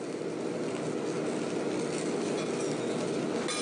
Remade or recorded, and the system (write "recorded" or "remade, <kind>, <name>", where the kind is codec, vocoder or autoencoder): recorded